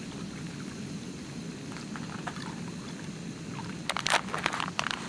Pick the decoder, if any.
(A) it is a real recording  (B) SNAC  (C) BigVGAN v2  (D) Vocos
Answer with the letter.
A